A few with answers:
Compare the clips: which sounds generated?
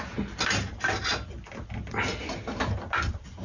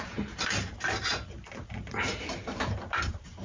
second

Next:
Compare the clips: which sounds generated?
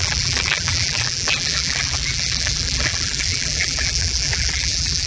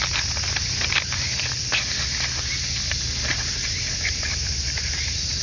first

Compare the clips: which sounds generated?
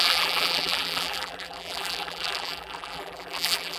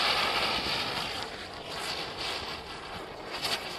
first